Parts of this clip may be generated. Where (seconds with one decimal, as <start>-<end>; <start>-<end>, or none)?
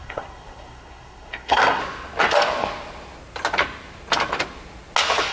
0.0-1.8